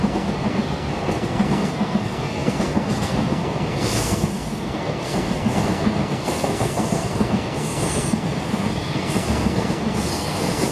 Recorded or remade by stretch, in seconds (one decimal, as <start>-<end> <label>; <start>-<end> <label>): 0.0-10.7 remade